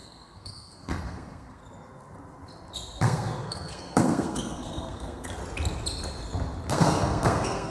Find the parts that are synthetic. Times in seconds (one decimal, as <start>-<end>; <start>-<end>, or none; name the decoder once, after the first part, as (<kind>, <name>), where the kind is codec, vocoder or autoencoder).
0.0-1.6 (codec, SNAC); 3.0-5.4; 6.7-7.7